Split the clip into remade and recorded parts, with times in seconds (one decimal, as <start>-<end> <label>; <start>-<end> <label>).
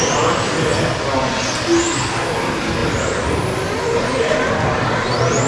0.0-5.5 recorded